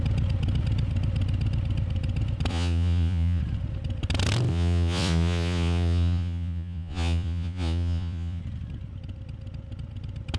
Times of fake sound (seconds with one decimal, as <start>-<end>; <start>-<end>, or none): 2.5-3.4; 4.5-8.4